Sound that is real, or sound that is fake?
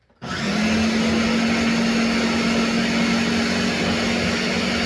real